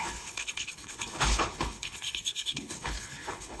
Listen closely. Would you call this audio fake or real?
fake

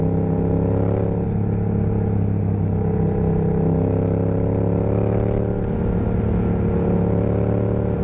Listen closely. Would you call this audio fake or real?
real